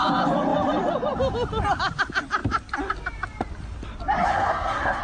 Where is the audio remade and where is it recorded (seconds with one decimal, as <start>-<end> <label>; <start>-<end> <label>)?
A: 0.0-4.3 recorded; 4.3-5.0 remade